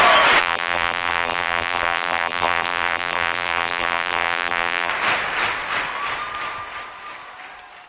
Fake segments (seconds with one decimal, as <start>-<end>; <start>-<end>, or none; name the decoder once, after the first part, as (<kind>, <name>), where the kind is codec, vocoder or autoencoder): 0.4-4.9 (vocoder, BigVGAN v2)